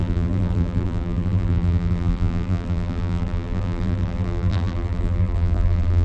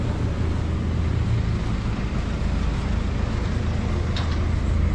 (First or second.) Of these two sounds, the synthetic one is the first